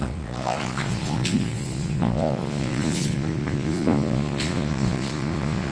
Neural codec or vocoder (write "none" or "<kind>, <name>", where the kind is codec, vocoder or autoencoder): vocoder, Vocos